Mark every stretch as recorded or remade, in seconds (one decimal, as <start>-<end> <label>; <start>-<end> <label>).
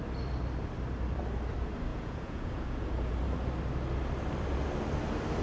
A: 0.0-1.9 recorded; 1.9-3.2 remade; 3.2-5.4 recorded